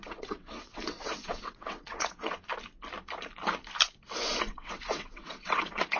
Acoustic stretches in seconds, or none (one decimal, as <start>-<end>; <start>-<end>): 2.5-4.4